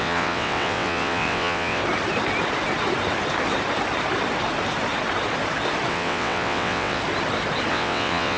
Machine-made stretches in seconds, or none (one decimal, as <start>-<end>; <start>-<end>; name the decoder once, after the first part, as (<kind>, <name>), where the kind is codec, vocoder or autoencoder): 0.0-1.8 (vocoder, WaveNeXt); 5.9-7.0; 7.7-8.4

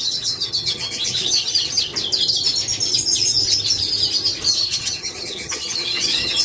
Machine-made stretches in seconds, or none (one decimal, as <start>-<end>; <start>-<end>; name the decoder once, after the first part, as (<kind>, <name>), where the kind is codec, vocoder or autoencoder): 0.0-1.9 (vocoder, HiFi-GAN); 4.5-6.4

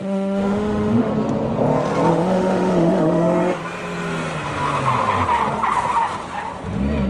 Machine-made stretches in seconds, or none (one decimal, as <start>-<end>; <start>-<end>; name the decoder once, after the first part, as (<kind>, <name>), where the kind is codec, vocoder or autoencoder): 0.0-1.1 (autoencoder, DAC-VAE); 2.1-3.6

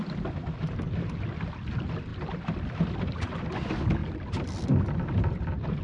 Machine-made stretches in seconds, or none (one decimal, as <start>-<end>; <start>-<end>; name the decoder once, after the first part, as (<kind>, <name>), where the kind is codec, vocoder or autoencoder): 2.1-3.3 (vocoder, BigVGAN v2); 4.0-4.9

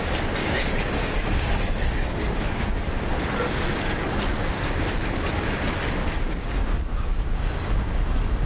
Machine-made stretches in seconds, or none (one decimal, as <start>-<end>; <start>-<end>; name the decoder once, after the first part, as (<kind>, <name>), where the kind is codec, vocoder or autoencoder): 0.4-2.6 (codec, DAC); 6.0-7.4

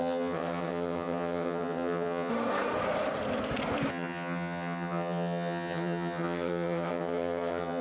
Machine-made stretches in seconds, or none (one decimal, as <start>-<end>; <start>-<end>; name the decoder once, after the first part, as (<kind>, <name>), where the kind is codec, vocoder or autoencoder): 0.0-2.3 (vocoder, HiFi-GAN); 3.9-7.8

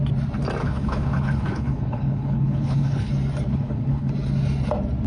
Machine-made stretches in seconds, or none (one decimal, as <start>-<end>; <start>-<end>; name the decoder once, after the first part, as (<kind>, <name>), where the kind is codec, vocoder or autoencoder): 0.6-3.1 (codec, HILCodec); 3.5-4.1